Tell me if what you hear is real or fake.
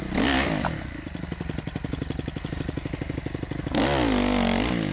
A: real